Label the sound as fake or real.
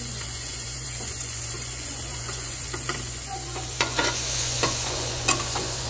fake